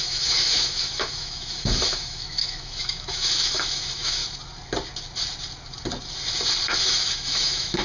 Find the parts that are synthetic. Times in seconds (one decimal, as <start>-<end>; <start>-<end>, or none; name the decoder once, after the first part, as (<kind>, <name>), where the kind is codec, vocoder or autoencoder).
0.0-4.2 (autoencoder, DAC-VAE); 6.8-7.8